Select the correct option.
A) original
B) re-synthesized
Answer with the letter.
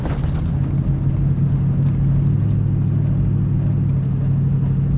A